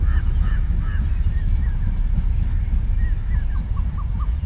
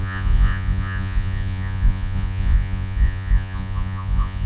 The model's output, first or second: second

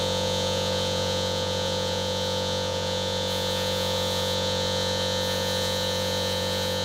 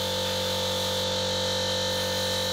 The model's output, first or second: first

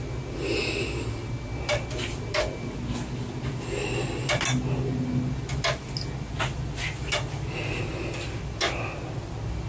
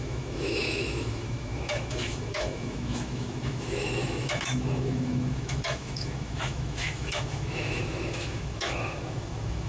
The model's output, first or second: second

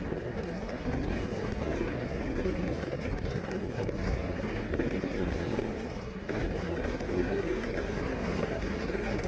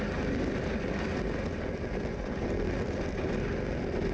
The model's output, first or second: first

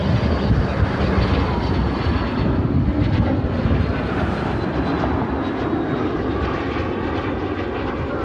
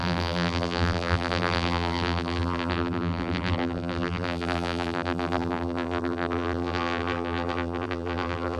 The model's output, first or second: second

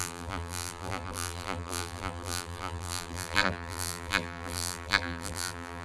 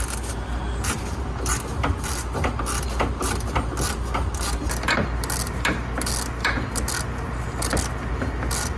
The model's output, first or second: first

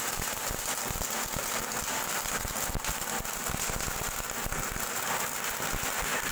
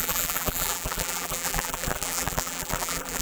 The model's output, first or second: second